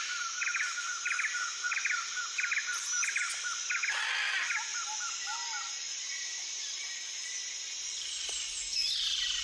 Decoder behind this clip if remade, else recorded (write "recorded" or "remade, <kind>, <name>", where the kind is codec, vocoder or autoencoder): recorded